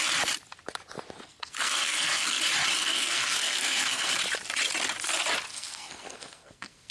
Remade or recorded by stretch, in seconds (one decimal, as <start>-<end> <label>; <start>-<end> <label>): 0.0-1.3 recorded; 1.3-2.4 remade; 2.4-2.8 recorded; 2.8-4.1 remade; 4.1-5.5 recorded; 5.5-6.9 remade